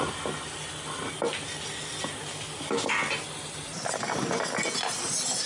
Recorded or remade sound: recorded